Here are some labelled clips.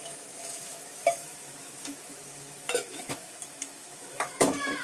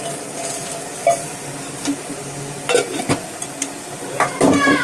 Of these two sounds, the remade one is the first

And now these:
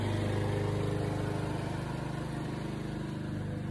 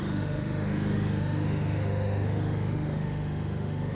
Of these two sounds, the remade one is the second